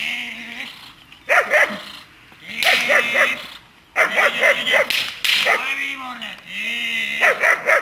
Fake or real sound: real